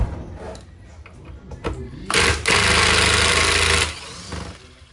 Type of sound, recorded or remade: recorded